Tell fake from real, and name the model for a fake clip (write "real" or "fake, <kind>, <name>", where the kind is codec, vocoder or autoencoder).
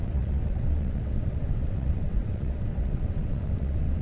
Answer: fake, vocoder, WaveNeXt